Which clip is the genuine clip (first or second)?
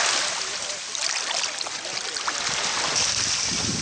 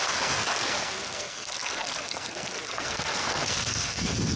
first